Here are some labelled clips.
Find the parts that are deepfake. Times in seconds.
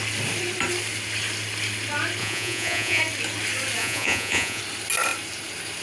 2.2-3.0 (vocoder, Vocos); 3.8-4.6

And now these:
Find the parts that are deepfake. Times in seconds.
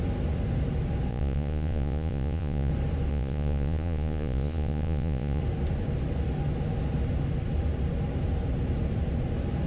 1.1-2.7 (vocoder, Vocos); 3.1-5.4